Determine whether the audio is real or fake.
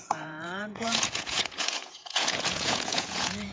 fake